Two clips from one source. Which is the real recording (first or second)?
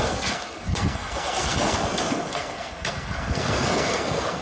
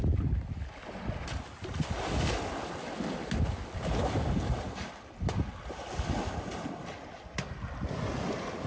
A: second